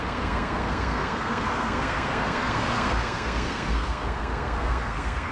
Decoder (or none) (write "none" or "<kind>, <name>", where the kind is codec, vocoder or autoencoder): codec, SNAC